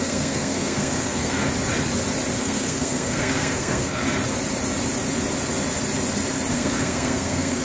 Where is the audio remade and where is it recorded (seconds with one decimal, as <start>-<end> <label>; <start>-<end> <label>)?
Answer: 0.0-1.4 remade; 1.4-2.4 recorded; 2.4-4.0 remade; 4.0-6.5 recorded; 6.5-7.6 remade